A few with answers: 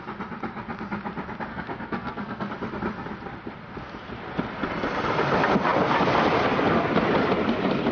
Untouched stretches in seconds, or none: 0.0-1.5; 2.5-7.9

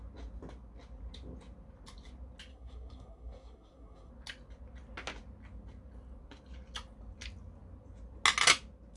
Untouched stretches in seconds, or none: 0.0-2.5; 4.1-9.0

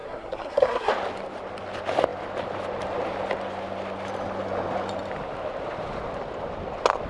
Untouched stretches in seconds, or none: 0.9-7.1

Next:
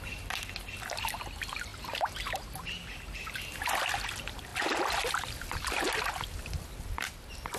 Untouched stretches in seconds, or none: 0.0-7.6

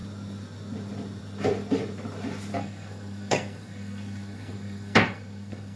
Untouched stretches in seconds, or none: 0.0-2.5

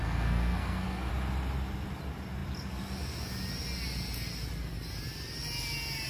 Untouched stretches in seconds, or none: 1.1-6.1

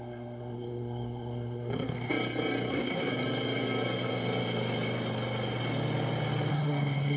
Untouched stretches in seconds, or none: 2.1-2.7; 3.1-6.5